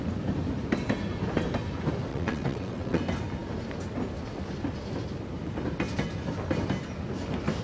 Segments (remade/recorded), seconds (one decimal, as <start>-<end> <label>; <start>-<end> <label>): 0.0-2.1 recorded; 2.1-3.0 remade; 3.0-7.6 recorded